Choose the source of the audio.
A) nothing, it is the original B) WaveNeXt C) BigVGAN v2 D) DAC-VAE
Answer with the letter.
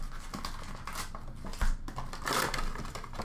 A